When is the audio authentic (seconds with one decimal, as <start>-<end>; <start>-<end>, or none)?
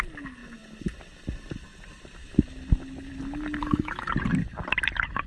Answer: 0.0-3.6; 4.1-5.3